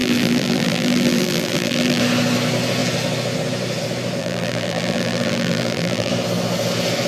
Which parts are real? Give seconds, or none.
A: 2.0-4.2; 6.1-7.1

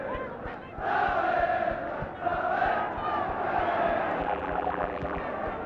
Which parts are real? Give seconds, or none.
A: 0.0-4.2; 5.2-5.7

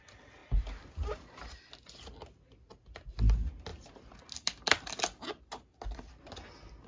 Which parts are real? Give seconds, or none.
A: 0.0-6.9